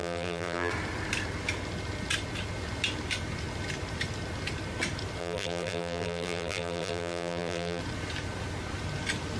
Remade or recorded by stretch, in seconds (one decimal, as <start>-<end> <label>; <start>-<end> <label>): 0.0-0.7 remade; 0.7-5.2 recorded; 5.2-7.8 remade; 7.8-9.4 recorded